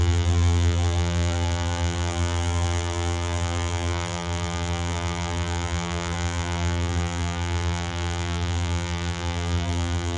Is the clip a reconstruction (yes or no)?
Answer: yes